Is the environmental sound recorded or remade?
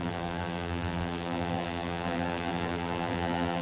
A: remade